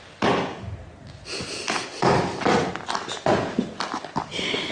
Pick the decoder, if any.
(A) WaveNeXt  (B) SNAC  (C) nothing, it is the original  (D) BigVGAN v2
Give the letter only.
C